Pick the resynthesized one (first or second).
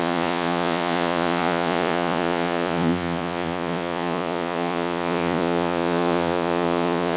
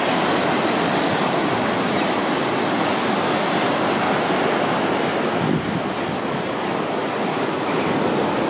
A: first